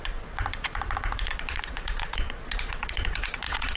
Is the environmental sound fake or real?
fake